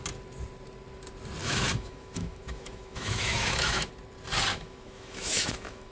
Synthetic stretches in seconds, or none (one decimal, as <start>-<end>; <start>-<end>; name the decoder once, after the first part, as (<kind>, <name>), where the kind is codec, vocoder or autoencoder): 1.4-3.9 (autoencoder, DAC-VAE); 4.5-5.9